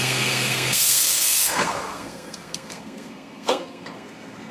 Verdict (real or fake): fake